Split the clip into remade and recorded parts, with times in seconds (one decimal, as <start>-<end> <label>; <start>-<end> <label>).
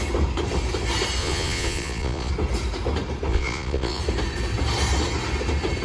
0.0-1.2 recorded; 1.2-2.3 remade; 2.3-3.3 recorded; 3.3-4.0 remade; 4.0-5.8 recorded